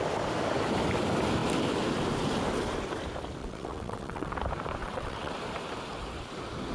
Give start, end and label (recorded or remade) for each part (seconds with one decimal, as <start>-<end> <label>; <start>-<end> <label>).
0.0-3.4 recorded; 3.4-4.3 remade; 4.3-4.8 recorded; 4.8-5.3 remade; 5.3-6.7 recorded